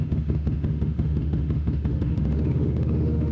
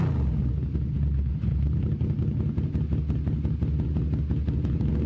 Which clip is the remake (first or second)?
first